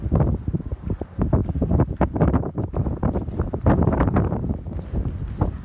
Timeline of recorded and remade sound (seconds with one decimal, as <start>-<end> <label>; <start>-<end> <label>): 0.0-0.7 recorded; 0.7-5.6 remade